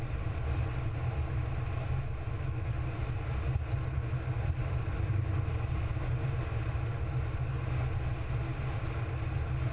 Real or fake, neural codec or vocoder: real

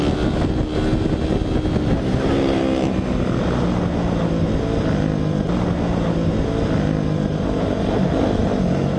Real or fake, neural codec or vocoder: real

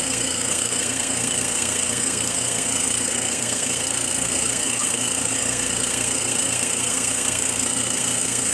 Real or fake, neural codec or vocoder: fake, codec, SNAC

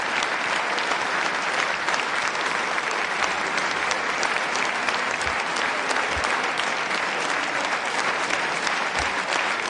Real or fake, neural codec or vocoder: fake, vocoder, BigVGAN v2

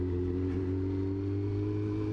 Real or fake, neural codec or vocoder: real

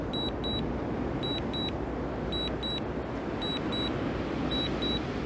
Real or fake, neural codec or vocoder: real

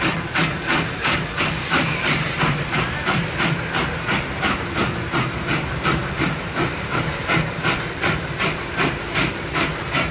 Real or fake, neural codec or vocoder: fake, vocoder, BigVGAN v2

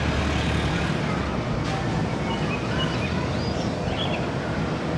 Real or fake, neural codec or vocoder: real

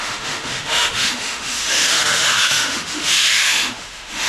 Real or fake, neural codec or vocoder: fake, autoencoder, DAC-VAE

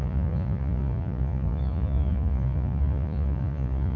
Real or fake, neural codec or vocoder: fake, vocoder, Vocos